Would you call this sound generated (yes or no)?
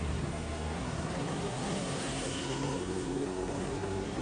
yes